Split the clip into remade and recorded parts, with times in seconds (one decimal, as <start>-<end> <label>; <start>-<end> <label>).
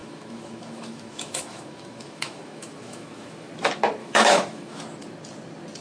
0.0-3.5 remade; 3.5-4.0 recorded; 4.0-4.8 remade; 4.8-5.8 recorded